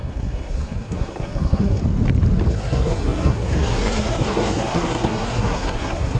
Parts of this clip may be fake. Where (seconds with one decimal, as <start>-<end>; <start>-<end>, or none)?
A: 0.0-1.8; 2.5-6.2